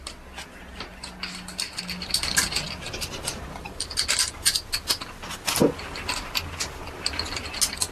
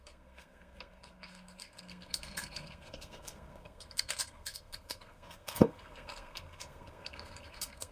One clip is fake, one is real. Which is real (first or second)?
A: first